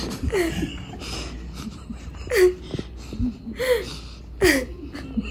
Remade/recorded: recorded